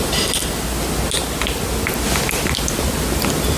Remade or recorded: recorded